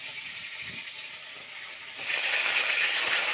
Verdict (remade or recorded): remade